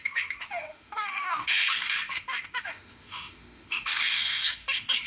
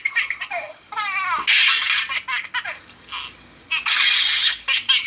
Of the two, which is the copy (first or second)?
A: first